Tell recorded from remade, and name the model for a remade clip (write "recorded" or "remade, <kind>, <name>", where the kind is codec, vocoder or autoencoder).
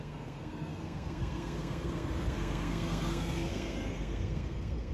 remade, codec, SNAC